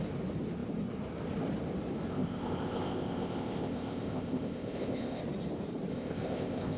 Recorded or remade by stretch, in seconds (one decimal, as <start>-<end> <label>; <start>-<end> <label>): 0.0-2.1 recorded; 2.1-5.2 remade; 5.2-5.9 recorded; 5.9-6.8 remade